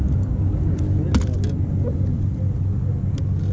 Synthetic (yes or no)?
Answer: no